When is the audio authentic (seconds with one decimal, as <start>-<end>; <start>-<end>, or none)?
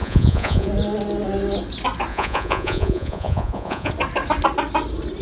0.7-2.1; 3.9-5.2